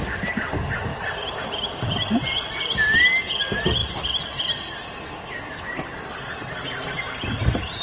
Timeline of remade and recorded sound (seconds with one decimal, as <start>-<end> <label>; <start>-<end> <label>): 0.0-7.8 recorded